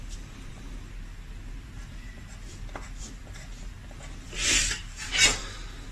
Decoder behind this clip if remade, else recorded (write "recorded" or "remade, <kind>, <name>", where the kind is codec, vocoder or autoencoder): recorded